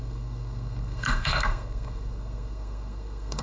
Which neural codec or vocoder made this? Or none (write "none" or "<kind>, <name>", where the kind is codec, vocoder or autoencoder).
codec, SNAC